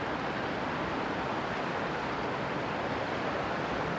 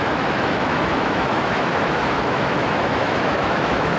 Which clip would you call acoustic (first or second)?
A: first